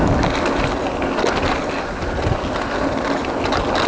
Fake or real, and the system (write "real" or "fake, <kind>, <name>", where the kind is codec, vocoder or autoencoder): real